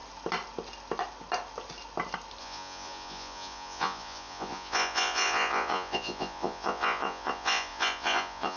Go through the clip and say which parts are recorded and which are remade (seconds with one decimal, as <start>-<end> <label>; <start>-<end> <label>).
0.0-2.4 recorded; 2.4-8.6 remade